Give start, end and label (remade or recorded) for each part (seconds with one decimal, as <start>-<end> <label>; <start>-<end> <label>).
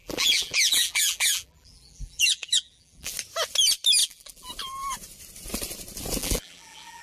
0.0-3.1 remade; 3.1-4.0 recorded; 4.0-4.5 remade; 4.5-6.2 recorded; 6.2-7.0 remade